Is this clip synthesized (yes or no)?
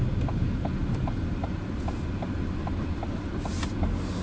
no